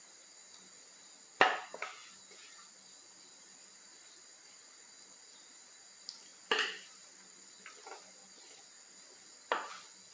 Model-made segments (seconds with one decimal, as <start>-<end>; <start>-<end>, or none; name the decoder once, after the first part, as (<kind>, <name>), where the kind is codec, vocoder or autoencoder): none